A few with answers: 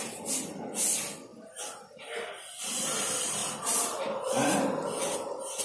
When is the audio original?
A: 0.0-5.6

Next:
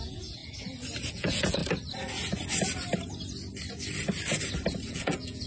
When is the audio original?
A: 0.4-1.1; 1.6-4.9

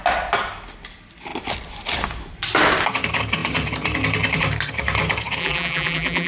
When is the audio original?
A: 0.0-5.4

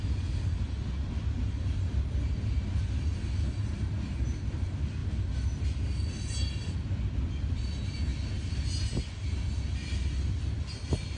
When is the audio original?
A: 0.0-11.2